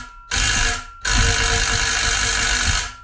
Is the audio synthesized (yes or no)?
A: no